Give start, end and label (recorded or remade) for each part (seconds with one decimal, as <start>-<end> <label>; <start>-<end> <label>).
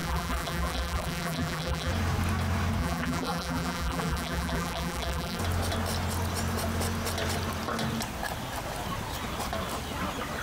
0.0-1.9 remade; 1.9-2.8 recorded; 2.8-5.4 remade; 5.4-10.4 recorded